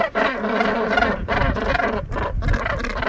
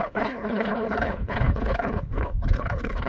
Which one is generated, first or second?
second